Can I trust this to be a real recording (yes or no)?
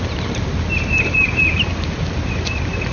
yes